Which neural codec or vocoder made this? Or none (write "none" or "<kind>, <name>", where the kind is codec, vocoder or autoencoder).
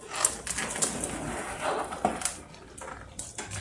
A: none